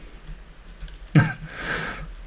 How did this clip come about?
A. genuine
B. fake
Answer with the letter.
A